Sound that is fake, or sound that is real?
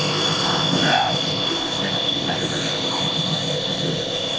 fake